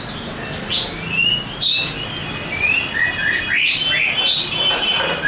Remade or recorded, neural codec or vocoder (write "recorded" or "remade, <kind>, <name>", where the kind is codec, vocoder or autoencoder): recorded